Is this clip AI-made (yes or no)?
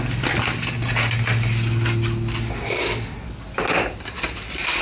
no